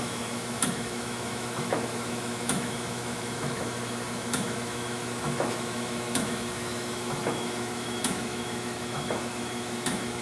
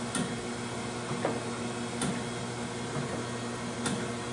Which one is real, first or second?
second